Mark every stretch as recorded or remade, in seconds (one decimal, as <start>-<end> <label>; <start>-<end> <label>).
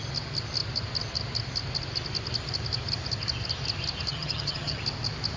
0.0-4.1 recorded; 4.1-4.8 remade; 4.8-5.4 recorded